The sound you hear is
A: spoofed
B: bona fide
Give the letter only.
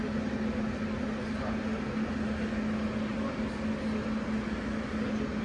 B